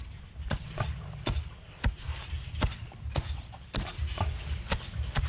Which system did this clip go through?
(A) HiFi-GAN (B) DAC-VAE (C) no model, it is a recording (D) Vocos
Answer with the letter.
C